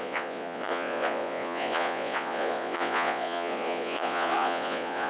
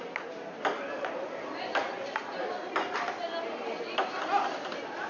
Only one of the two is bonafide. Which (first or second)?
second